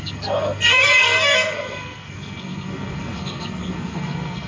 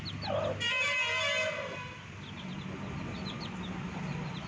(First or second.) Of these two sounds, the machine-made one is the first